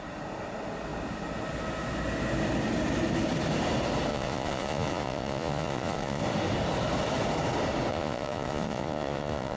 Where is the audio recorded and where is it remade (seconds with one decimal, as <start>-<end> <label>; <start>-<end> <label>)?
0.0-4.1 recorded; 4.1-6.2 remade; 6.2-7.9 recorded; 7.9-9.6 remade